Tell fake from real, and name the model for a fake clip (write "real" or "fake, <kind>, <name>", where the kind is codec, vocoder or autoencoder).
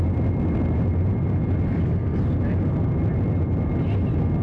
real